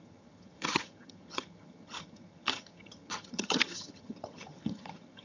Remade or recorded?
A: remade